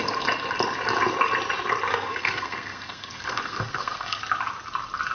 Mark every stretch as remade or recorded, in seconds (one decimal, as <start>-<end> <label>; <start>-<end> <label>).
0.0-1.9 recorded; 1.9-4.2 remade; 4.2-5.1 recorded